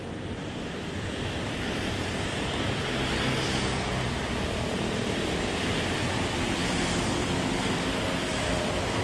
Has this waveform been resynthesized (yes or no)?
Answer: yes